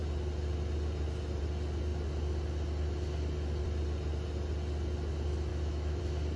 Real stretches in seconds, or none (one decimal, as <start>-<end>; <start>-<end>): 0.0-5.5; 6.0-6.4